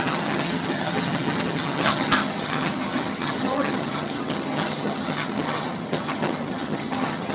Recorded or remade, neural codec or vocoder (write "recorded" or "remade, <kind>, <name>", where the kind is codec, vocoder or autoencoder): remade, vocoder, HiFi-GAN